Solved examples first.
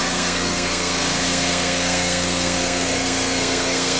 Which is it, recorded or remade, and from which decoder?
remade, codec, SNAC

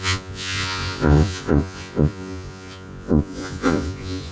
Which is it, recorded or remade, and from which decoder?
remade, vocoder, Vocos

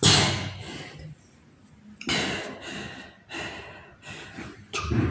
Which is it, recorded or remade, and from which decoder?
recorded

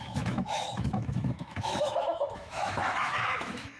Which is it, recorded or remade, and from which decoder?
remade, autoencoder, DAC-VAE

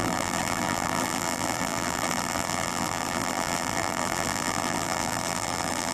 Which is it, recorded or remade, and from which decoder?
remade, vocoder, BigVGAN v2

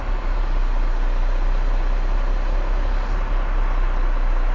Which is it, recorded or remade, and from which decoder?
recorded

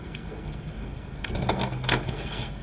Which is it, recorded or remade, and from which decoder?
remade, codec, SNAC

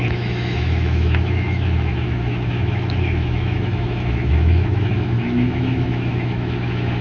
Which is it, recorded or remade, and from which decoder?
remade, autoencoder, DAC-VAE